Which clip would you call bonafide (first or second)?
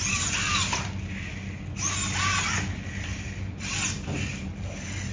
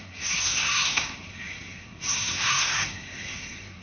first